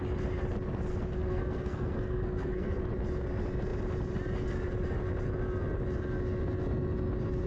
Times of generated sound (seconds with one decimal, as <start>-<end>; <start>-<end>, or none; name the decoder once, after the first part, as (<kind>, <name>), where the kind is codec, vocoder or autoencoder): 0.9-2.8 (codec, SNAC)